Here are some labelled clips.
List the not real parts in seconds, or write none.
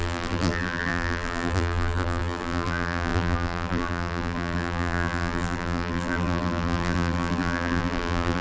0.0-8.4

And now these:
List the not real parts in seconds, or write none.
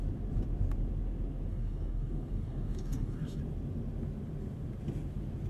1.5-3.4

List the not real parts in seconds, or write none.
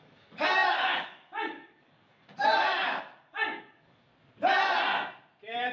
0.0-4.1